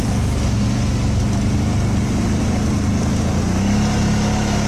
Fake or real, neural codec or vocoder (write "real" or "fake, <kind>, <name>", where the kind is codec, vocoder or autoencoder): real